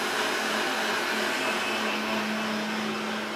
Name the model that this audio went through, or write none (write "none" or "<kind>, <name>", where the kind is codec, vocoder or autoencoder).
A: none